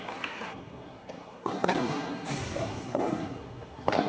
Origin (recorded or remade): remade